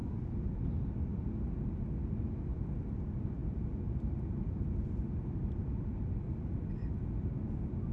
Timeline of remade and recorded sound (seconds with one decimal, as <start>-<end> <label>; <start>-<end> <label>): 0.0-7.9 recorded